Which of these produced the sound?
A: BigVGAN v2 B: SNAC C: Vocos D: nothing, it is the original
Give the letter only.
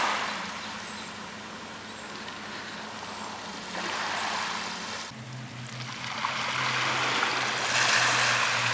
D